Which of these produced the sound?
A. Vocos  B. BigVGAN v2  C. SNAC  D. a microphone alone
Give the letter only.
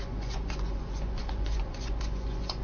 A